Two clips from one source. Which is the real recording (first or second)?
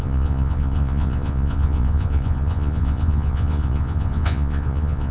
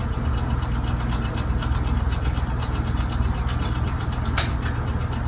second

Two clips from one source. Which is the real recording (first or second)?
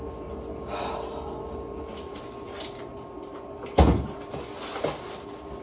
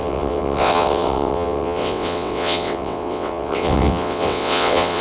first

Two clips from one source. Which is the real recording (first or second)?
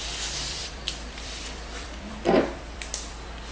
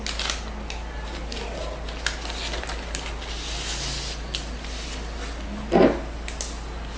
second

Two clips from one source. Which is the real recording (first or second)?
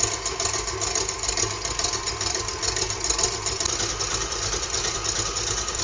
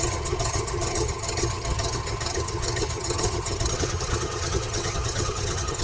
first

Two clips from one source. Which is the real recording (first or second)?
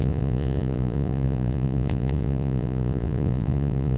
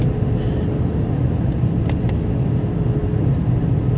second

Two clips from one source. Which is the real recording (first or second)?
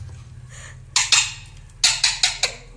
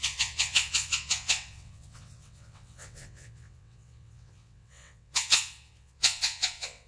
first